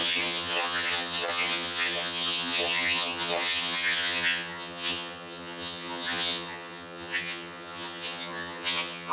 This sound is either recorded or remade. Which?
remade